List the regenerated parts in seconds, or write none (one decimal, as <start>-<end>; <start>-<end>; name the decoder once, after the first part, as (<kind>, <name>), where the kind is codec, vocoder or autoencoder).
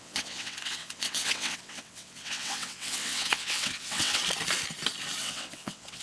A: 0.0-4.2 (vocoder, WaveNeXt); 5.2-6.0